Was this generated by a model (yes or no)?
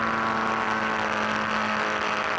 no